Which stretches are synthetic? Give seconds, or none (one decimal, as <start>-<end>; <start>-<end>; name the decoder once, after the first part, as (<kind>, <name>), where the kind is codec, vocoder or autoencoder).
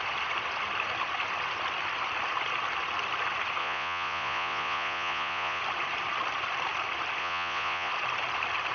3.6-5.6 (vocoder, Vocos); 7.2-7.9